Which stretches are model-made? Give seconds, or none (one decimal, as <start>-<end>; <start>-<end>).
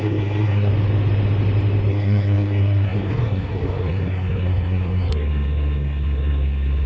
0.0-0.7; 1.9-6.9